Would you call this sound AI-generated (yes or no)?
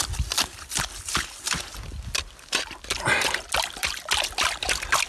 no